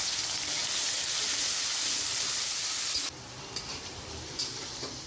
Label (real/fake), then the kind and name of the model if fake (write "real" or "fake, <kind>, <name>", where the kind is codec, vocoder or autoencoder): fake, vocoder, BigVGAN v2